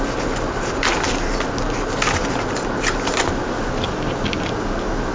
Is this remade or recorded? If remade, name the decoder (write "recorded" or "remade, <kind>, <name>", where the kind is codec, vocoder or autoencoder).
recorded